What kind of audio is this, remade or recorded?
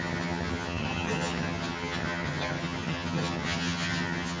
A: remade